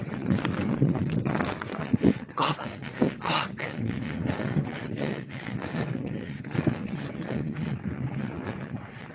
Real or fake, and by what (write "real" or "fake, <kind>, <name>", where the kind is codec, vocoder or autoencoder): fake, vocoder, WaveNeXt